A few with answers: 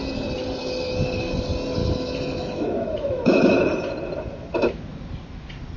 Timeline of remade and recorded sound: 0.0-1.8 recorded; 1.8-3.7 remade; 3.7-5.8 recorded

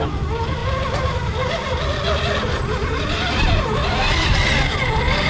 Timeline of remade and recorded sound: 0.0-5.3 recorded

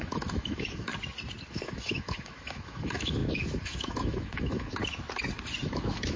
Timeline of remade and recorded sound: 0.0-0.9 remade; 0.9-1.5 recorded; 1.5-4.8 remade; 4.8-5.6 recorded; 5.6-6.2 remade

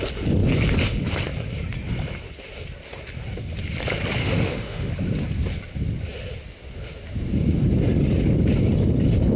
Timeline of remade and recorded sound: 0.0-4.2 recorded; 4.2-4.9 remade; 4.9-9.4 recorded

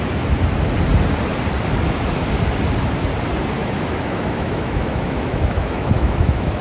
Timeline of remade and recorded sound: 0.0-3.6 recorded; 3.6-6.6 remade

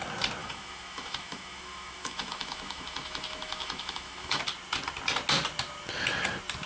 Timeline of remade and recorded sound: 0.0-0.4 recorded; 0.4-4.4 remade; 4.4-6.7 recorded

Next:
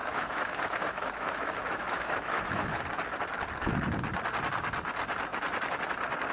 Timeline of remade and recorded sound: 0.0-2.8 remade; 2.8-6.3 recorded